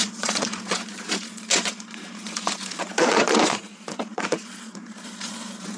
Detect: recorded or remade remade